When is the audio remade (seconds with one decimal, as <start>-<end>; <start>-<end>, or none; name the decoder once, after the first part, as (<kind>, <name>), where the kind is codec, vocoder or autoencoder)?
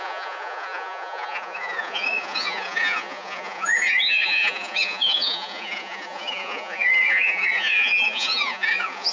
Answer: 0.0-9.1 (vocoder, Vocos)